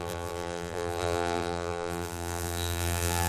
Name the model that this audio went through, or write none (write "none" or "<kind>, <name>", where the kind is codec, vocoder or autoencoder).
vocoder, BigVGAN v2